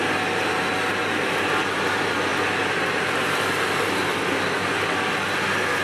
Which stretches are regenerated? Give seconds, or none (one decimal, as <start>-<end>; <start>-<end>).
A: none